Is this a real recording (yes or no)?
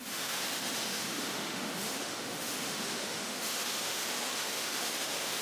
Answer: no